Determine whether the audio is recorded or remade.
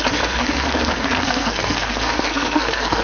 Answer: remade